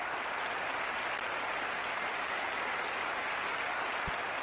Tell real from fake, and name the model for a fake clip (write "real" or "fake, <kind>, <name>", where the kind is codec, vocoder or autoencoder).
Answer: real